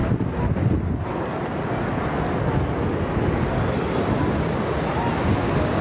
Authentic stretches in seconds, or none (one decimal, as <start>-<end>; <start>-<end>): 0.0-5.8